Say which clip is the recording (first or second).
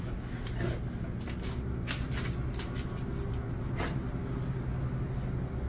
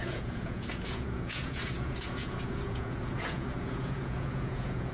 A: first